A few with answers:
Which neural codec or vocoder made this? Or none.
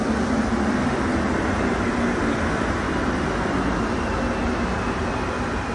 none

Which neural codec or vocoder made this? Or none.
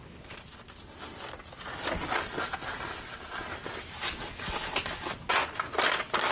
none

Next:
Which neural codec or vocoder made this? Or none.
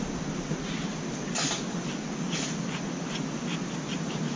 none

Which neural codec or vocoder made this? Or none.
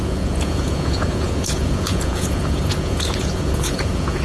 vocoder, Vocos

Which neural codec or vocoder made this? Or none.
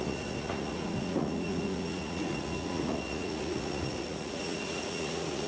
vocoder, Vocos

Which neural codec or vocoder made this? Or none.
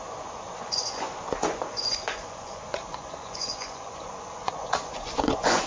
vocoder, Vocos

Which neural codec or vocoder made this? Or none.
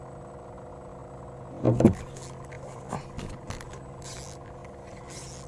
none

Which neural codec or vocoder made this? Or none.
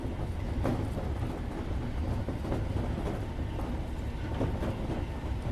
none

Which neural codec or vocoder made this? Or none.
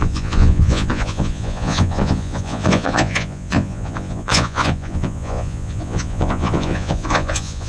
vocoder, Vocos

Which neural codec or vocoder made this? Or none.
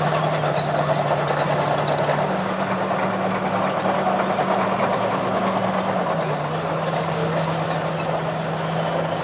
none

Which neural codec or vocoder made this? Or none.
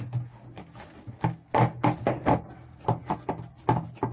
none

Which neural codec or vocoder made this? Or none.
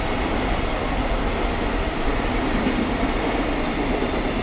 none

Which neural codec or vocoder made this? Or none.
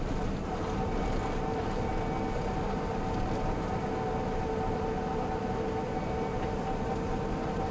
none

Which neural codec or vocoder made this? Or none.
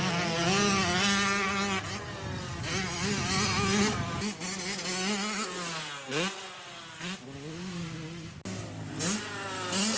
none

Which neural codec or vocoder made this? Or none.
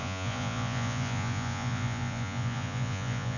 vocoder, Vocos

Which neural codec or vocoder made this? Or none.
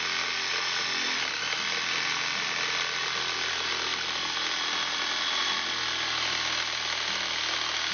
none